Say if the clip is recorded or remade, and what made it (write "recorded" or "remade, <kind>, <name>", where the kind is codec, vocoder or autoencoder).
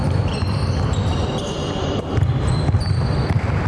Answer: recorded